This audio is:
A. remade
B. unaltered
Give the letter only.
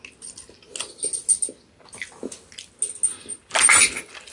B